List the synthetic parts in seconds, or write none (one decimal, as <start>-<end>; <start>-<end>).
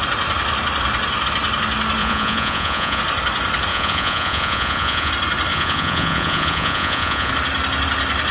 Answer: 2.0-3.0; 3.7-5.1; 5.5-7.3